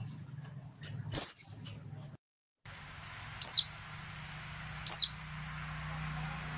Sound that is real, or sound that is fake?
real